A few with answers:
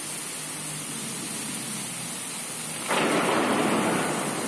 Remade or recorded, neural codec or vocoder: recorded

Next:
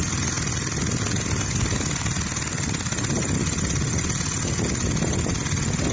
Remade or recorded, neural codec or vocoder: recorded